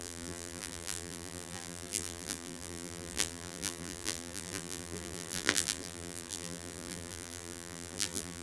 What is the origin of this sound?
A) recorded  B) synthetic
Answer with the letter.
B